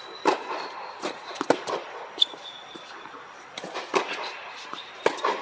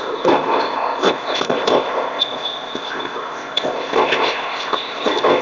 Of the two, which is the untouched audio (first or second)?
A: first